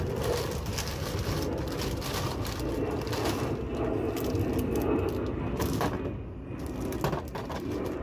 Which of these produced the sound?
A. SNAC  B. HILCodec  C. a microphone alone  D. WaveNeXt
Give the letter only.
C